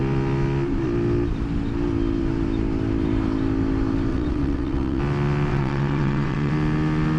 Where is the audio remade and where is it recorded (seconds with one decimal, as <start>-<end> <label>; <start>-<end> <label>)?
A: 0.0-4.1 recorded; 4.1-5.0 remade; 5.0-5.5 recorded; 5.5-6.5 remade; 6.5-7.2 recorded